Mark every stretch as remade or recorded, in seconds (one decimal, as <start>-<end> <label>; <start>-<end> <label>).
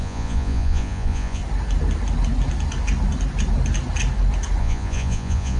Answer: 0.0-1.4 remade; 1.4-4.6 recorded; 4.6-5.6 remade